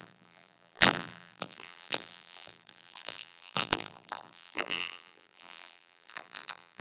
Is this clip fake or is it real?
fake